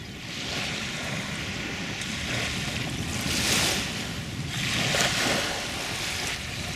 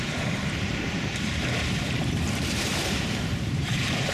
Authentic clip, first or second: first